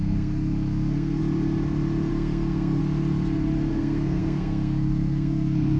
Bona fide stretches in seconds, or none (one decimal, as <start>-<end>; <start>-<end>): 1.2-2.1; 2.8-3.7